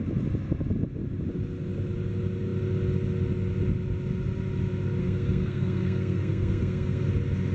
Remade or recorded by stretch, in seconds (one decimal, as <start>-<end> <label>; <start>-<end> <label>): 0.0-5.0 recorded; 5.0-7.0 remade; 7.0-7.5 recorded